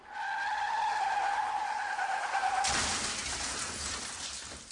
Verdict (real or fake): real